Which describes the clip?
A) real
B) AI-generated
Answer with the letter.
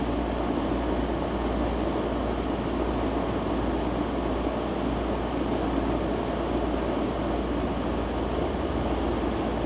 A